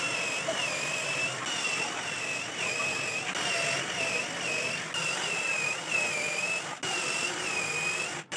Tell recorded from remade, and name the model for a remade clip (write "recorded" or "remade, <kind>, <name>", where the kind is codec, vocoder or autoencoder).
recorded